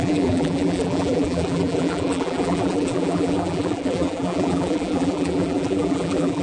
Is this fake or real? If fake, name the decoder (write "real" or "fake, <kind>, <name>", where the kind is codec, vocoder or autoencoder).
fake, vocoder, BigVGAN v2